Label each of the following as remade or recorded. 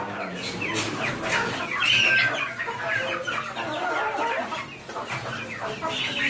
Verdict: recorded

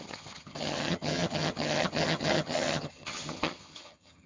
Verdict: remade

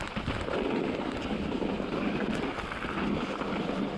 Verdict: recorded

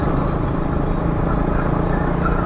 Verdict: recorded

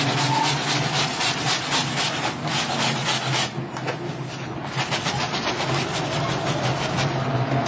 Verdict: recorded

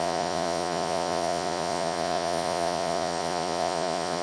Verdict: remade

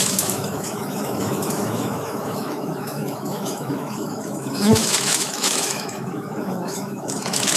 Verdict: remade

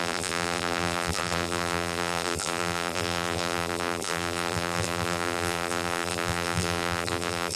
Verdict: remade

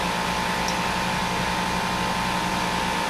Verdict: recorded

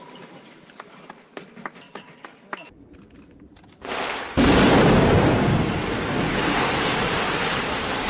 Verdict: remade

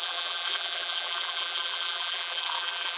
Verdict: remade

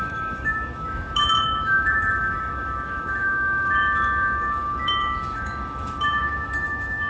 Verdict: remade